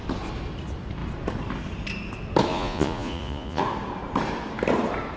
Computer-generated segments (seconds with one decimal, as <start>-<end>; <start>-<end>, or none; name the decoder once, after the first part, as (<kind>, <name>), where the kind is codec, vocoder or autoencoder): 2.5-3.6 (vocoder, Vocos)